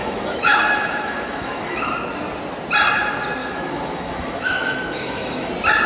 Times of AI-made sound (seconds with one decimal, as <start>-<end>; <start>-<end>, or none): 0.0-1.9; 3.4-5.5